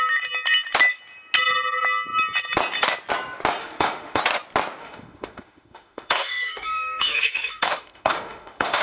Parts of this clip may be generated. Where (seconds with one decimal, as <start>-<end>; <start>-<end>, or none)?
3.6-4.2; 4.8-8.8